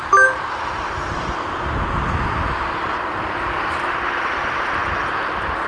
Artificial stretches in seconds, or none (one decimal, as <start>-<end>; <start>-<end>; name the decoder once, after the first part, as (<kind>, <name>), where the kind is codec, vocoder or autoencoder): 0.0-1.0 (vocoder, BigVGAN v2); 2.6-5.7